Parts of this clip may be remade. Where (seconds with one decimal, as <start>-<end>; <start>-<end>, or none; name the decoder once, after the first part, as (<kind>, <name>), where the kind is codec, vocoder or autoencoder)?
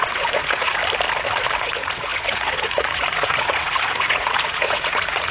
0.0-0.8 (vocoder, Vocos); 1.6-5.3